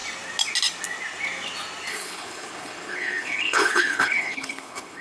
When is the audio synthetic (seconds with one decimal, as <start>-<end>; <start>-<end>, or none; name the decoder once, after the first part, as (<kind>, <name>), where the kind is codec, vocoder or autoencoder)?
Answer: 1.9-5.0 (codec, HILCodec)